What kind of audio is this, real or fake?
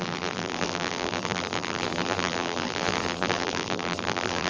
fake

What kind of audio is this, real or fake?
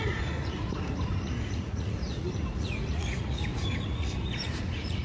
fake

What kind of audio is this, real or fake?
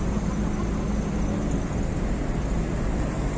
real